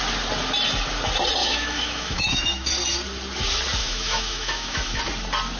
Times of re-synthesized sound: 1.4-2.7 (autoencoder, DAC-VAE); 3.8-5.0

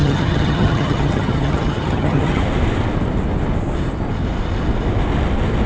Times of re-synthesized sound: 0.0-2.4 (vocoder, HiFi-GAN)

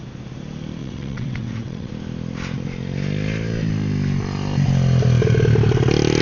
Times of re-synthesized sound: 0.8-1.9 (vocoder, WaveNeXt)